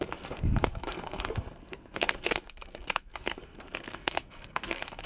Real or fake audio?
fake